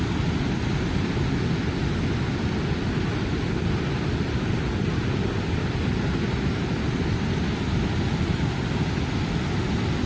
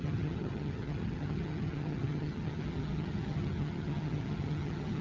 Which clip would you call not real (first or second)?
second